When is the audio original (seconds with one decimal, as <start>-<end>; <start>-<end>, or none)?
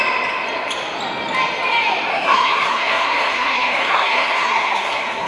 0.0-2.1